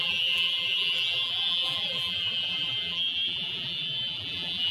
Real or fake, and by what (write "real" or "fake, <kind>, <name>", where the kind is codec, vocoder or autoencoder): fake, vocoder, BigVGAN v2